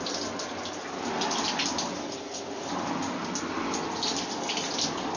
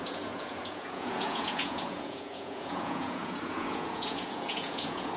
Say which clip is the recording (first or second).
first